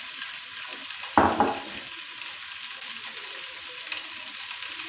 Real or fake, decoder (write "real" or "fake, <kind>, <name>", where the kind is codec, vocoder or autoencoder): real